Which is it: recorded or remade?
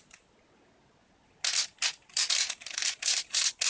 recorded